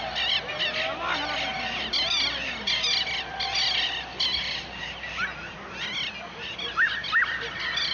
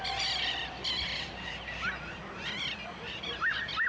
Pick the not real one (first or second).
second